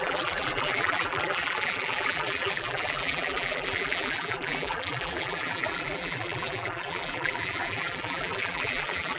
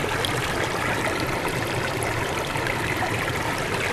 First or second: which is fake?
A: first